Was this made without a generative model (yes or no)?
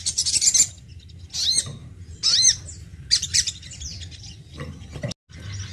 yes